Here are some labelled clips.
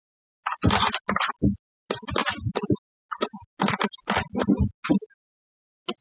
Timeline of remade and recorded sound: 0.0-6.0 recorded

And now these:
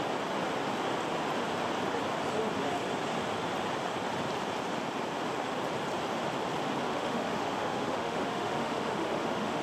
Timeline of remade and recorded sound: 0.0-6.9 recorded; 6.9-9.6 remade

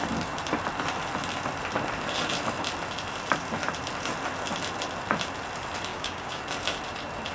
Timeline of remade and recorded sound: 0.0-5.9 recorded; 5.9-6.4 remade; 6.4-7.3 recorded

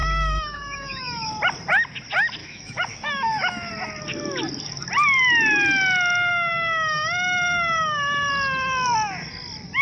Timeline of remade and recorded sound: 0.0-1.3 remade; 1.3-2.4 recorded; 2.4-3.7 remade; 3.7-6.3 recorded; 6.3-8.3 remade; 8.3-9.8 recorded

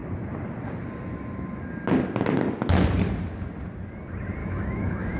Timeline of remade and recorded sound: 0.0-4.4 recorded; 4.4-5.2 remade

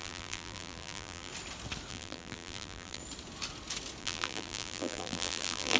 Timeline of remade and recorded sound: 0.0-1.3 remade; 1.3-1.9 recorded; 1.9-3.0 remade; 3.0-4.0 recorded; 4.0-5.8 remade

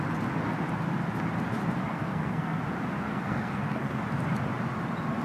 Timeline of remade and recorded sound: 0.0-1.9 recorded; 1.9-2.6 remade; 2.6-3.1 recorded; 3.1-4.0 remade; 4.0-5.2 recorded